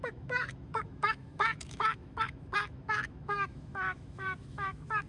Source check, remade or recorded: remade